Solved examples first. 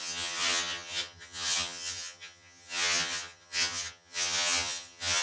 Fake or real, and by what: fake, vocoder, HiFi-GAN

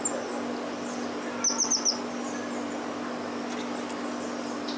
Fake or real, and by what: real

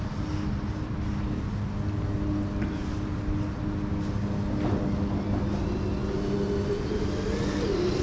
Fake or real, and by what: real